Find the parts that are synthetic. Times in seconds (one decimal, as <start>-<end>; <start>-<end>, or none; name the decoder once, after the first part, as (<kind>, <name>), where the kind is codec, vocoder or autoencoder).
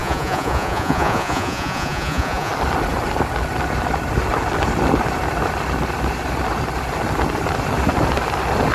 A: 0.0-2.5 (vocoder, Vocos)